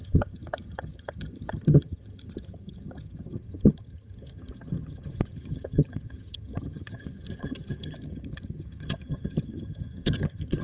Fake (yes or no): yes